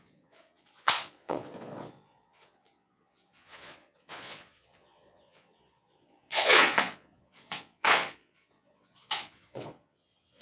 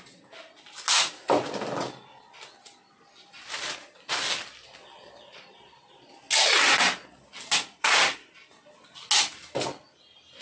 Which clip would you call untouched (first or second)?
second